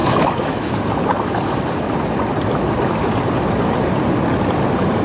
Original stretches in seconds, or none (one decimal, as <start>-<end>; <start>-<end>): 0.7-5.0